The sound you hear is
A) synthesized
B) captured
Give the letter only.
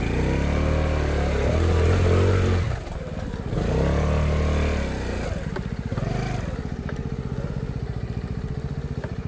B